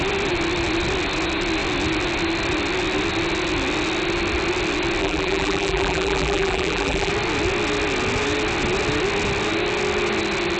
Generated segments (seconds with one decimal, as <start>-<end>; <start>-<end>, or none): 5.0-7.1